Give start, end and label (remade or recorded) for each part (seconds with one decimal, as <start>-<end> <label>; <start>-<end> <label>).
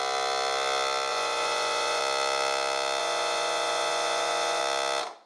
0.0-1.1 recorded; 1.1-2.0 remade; 2.0-3.0 recorded; 3.0-4.6 remade; 4.6-5.3 recorded